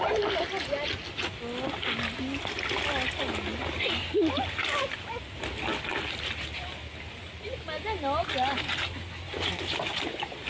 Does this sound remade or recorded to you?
recorded